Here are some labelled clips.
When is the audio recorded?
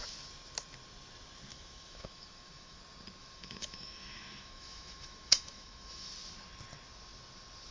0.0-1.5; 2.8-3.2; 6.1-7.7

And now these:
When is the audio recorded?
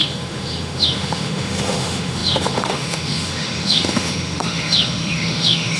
none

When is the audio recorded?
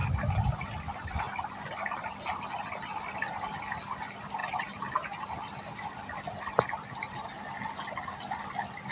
0.0-8.9